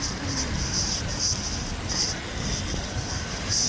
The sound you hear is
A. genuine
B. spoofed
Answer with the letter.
A